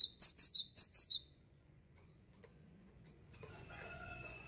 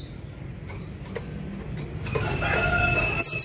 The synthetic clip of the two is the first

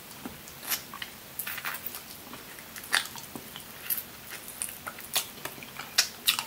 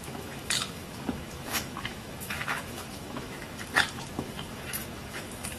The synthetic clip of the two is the second